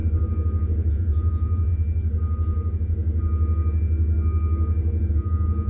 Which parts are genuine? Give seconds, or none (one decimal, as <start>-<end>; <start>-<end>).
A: 0.0-0.9; 1.7-5.1